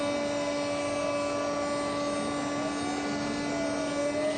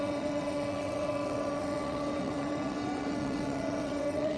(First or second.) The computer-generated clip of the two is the second